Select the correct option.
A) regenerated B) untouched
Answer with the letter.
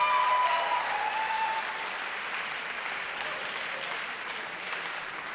B